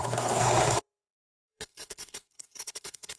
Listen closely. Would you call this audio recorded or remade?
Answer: remade